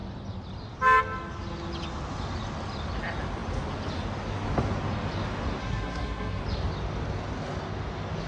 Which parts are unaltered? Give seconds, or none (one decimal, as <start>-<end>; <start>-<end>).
0.0-5.6; 6.4-8.3